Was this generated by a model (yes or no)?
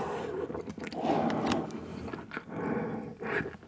no